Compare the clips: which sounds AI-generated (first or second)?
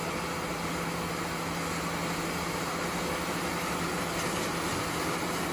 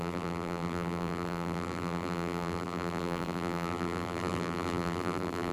second